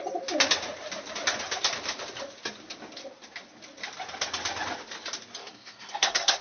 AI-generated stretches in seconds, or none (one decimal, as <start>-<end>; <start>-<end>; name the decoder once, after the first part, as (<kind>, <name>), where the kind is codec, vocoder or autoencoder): 5.4-6.4 (codec, SNAC)